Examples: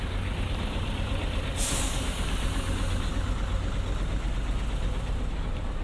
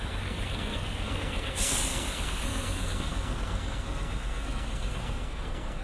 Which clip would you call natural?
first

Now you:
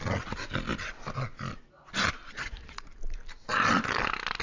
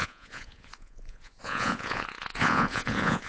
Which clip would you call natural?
first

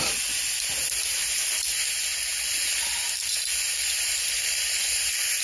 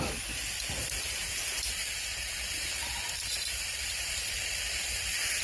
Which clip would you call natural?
first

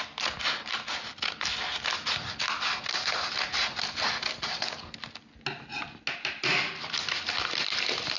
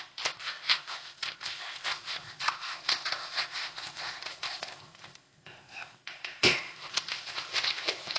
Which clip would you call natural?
first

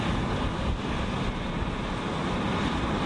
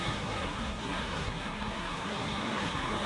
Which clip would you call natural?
first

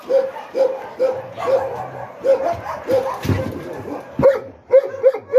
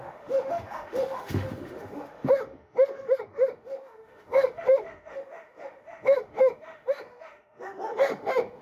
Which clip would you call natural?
first